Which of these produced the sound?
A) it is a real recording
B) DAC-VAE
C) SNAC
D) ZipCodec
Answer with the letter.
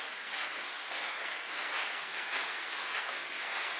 C